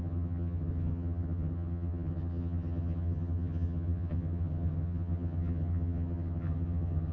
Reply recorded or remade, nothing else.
remade